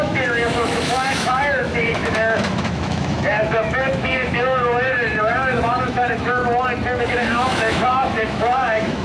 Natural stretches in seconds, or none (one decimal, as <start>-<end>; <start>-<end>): 6.4-7.0